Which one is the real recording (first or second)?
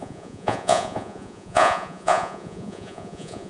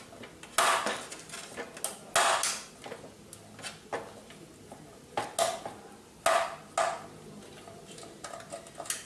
second